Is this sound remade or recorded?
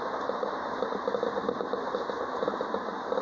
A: recorded